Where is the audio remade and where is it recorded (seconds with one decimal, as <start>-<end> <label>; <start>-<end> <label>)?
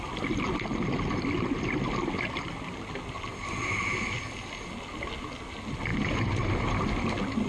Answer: 0.0-3.3 recorded; 3.3-4.3 remade; 4.3-5.9 recorded; 5.9-6.9 remade; 6.9-7.5 recorded